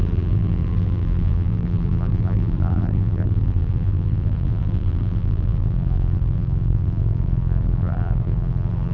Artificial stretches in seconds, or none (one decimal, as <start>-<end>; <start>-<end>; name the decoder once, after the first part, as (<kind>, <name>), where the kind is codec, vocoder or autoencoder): 0.0-8.9 (vocoder, BigVGAN v2)